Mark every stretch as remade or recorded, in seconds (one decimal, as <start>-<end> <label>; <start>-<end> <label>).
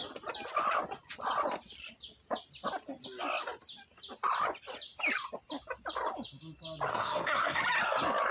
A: 0.0-6.9 recorded; 6.9-7.6 remade; 7.6-8.3 recorded